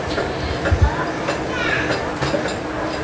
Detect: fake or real real